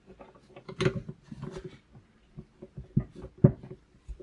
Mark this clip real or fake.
real